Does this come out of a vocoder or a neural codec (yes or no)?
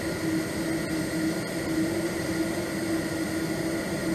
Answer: no